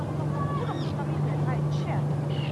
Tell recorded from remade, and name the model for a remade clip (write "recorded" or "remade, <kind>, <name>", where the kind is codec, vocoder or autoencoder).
recorded